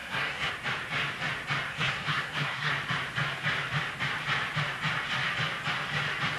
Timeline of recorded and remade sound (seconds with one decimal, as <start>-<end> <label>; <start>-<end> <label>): 0.0-0.5 remade; 0.5-1.7 recorded; 1.7-2.7 remade; 2.7-6.4 recorded